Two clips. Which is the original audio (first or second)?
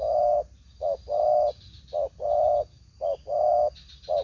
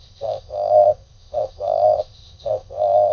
first